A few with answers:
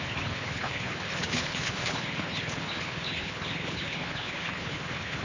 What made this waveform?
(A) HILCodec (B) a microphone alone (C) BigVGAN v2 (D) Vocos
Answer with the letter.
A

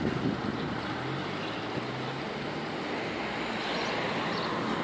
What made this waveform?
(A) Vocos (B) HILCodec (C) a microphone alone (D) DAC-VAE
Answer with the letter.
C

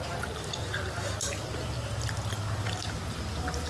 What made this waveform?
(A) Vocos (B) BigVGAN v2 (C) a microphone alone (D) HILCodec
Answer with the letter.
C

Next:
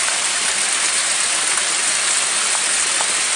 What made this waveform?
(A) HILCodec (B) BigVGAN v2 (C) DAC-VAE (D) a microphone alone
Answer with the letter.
D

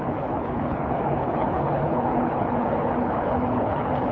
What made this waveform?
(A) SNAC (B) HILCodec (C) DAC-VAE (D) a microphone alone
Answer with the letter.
B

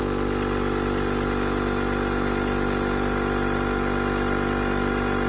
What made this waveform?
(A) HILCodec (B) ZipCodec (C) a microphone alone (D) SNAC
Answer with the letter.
C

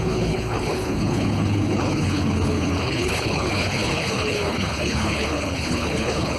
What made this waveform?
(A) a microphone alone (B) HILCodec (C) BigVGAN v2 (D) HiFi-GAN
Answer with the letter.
B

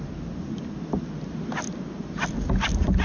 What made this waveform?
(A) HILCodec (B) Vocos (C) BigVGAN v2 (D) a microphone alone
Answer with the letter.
D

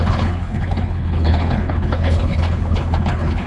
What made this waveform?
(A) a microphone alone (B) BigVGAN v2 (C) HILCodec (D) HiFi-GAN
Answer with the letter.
C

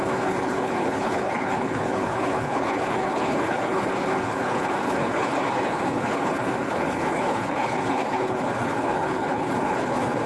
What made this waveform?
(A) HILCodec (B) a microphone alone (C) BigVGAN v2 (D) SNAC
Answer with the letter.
A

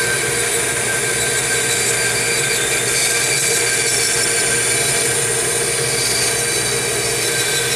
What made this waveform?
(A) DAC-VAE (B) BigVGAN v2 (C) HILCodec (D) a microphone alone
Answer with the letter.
D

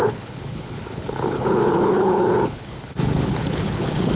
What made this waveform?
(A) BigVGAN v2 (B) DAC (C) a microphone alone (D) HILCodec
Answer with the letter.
D